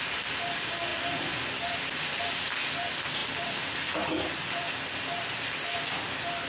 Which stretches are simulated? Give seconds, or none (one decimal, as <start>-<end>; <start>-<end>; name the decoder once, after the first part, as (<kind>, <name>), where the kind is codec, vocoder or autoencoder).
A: none